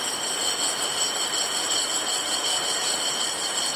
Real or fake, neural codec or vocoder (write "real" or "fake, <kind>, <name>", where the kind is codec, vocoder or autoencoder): real